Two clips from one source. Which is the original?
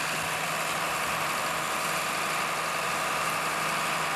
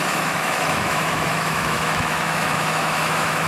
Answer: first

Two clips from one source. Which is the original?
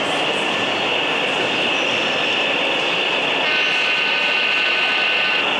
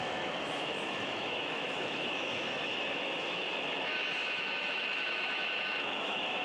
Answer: first